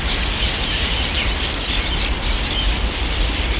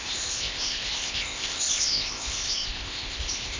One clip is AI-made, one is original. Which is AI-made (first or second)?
second